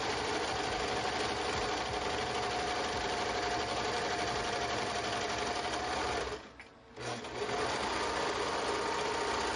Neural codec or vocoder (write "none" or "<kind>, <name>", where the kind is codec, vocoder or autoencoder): none